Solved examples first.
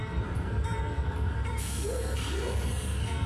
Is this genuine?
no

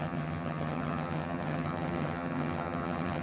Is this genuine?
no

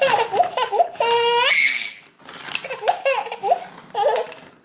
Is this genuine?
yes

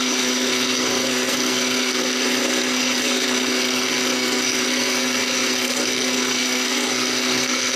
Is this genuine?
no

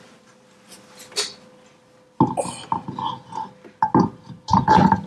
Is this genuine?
yes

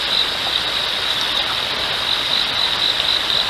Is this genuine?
yes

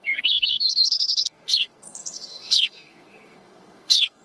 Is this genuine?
no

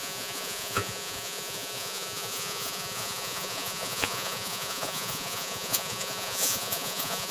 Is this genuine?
no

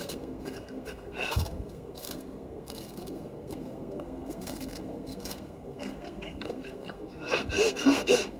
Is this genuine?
no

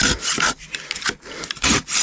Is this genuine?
yes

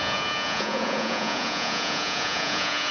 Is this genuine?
no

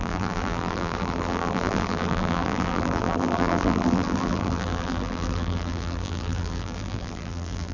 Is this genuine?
no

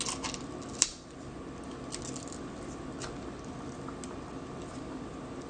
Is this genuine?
yes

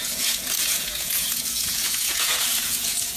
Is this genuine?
no